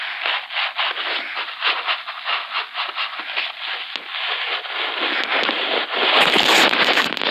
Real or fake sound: real